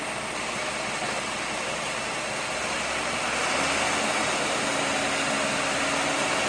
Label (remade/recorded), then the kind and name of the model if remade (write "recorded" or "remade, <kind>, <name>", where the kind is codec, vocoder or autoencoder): recorded